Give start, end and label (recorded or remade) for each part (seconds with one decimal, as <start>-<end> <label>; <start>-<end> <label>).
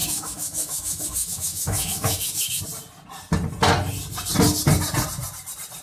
0.0-2.6 remade; 2.6-5.8 recorded